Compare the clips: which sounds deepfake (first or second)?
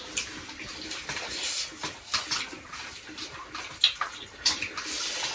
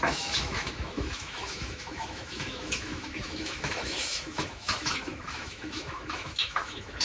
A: second